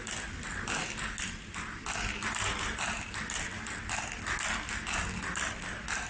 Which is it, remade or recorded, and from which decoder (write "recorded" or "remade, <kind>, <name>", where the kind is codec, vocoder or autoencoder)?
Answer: recorded